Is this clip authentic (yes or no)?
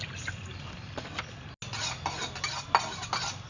yes